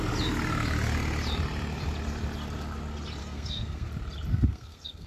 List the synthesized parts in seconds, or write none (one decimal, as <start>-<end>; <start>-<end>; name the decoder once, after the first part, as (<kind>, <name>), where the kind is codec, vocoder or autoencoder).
3.2-3.9 (codec, SNAC); 4.3-5.1